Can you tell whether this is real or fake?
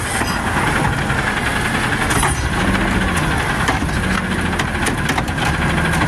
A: real